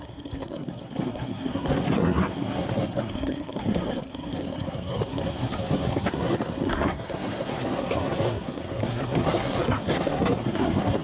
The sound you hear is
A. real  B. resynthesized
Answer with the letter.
B